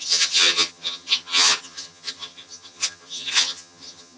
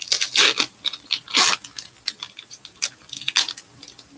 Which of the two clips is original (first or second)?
second